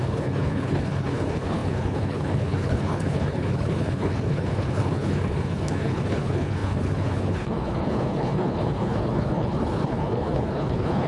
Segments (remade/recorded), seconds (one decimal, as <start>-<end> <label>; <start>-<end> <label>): 0.0-11.1 remade